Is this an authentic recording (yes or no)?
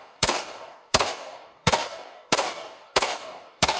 no